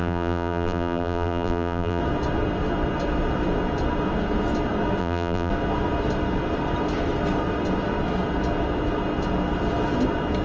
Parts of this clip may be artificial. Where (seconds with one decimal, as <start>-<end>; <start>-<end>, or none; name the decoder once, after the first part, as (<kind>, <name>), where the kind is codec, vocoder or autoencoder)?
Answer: 0.0-2.0 (vocoder, BigVGAN v2); 5.0-5.5